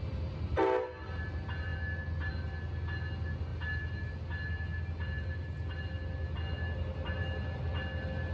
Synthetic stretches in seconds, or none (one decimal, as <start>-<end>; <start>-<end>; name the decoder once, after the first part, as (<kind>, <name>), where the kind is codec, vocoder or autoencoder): none

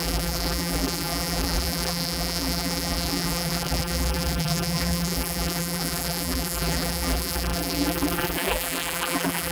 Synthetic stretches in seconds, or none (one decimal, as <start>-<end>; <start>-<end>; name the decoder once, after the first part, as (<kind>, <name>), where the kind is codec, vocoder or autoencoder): 0.0-9.5 (vocoder, BigVGAN v2)

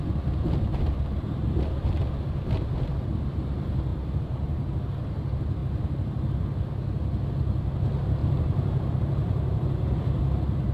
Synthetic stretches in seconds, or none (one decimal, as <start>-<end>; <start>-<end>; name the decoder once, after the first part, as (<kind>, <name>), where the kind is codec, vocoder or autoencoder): 0.7-1.5 (vocoder, BigVGAN v2); 3.9-4.9; 5.6-6.2; 8.2-10.2

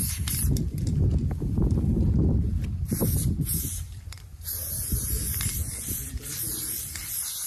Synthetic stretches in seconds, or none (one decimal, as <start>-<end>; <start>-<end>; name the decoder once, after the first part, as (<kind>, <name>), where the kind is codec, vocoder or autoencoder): 0.0-0.6 (vocoder, BigVGAN v2); 1.1-1.7; 2.5-7.0

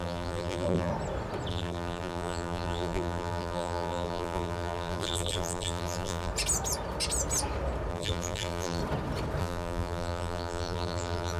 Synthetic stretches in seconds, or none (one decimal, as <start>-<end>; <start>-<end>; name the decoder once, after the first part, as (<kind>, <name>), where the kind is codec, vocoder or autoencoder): 0.0-0.9 (vocoder, BigVGAN v2); 1.5-6.3; 7.9-8.8; 9.4-11.4

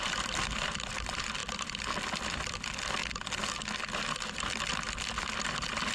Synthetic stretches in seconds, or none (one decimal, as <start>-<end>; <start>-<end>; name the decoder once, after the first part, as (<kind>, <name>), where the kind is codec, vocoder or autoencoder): 0.0-3.0 (vocoder, BigVGAN v2); 5.2-5.9

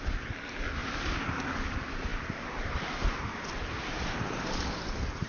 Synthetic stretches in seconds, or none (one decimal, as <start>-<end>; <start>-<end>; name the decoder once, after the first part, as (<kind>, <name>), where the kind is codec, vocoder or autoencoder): 0.8-1.4 (vocoder, BigVGAN v2); 2.1-5.3

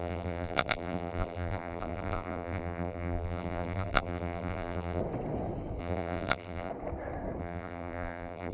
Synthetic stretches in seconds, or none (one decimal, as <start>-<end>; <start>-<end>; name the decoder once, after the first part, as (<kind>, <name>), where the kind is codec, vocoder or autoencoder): 0.0-5.0 (vocoder, BigVGAN v2); 5.8-6.7; 7.4-8.5